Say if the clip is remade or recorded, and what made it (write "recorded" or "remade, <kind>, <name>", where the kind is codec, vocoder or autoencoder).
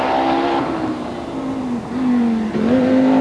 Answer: recorded